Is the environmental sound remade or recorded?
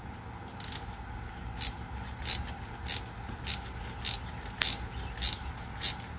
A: recorded